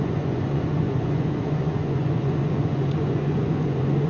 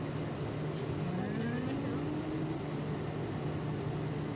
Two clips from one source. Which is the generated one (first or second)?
first